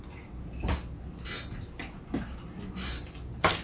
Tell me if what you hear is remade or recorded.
recorded